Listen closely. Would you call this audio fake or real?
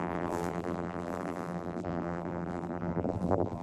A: fake